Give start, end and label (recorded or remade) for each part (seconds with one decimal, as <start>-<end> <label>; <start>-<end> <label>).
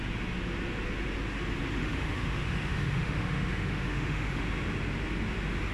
0.0-1.8 recorded; 1.8-4.4 remade; 4.4-5.7 recorded